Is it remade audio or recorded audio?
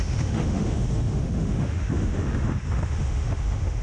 remade